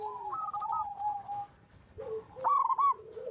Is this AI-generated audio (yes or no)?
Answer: no